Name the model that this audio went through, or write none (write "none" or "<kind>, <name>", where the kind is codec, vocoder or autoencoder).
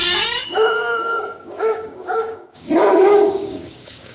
codec, DAC